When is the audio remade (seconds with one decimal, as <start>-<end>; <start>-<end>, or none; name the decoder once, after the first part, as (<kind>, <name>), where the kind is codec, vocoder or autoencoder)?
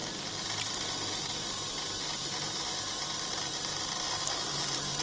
0.0-3.7 (vocoder, BigVGAN v2); 4.5-5.0